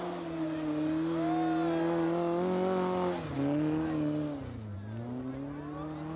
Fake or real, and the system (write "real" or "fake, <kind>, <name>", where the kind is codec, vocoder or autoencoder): real